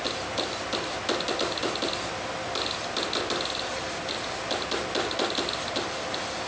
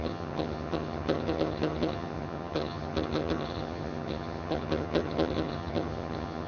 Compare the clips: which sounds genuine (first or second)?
first